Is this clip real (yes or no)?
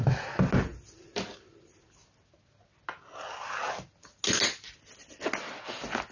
yes